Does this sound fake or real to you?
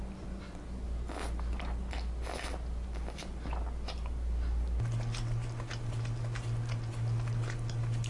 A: real